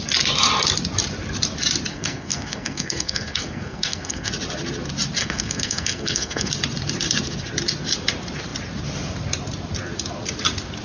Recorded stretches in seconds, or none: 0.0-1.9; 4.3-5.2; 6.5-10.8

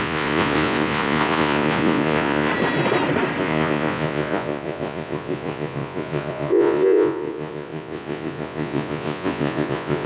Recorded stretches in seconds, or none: 2.5-3.4